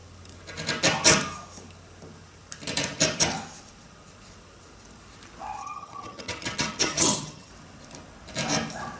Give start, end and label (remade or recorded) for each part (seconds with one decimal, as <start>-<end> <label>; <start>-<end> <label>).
0.0-5.6 recorded; 5.6-7.5 remade; 7.5-9.0 recorded